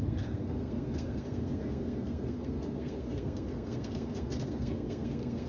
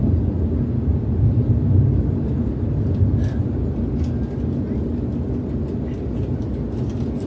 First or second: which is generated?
first